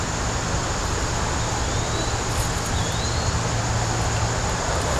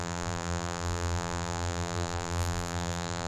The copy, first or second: second